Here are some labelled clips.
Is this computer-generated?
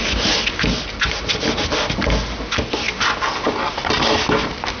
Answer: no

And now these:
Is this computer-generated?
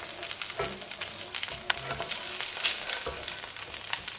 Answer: no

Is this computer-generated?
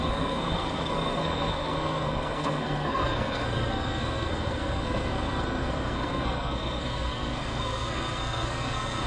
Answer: yes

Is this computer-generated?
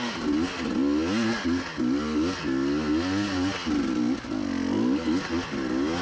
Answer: no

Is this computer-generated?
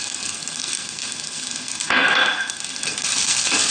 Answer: yes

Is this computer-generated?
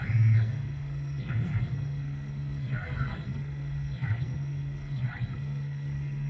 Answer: yes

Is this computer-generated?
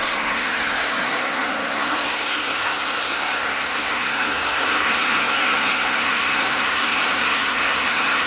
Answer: yes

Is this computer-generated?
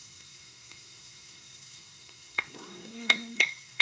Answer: yes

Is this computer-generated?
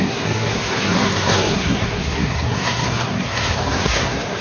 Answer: yes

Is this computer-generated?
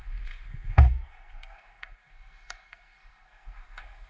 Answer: yes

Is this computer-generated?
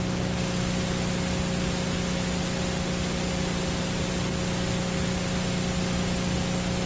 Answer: no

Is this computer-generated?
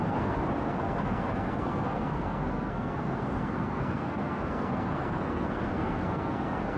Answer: yes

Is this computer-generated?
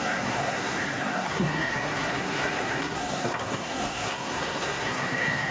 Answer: yes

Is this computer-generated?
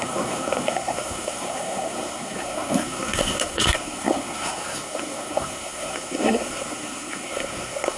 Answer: yes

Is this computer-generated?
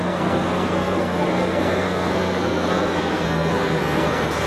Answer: yes